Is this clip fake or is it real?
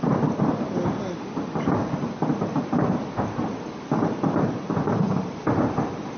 real